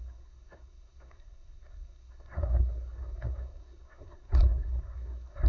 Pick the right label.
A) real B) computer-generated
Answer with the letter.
B